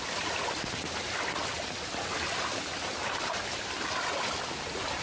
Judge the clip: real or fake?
real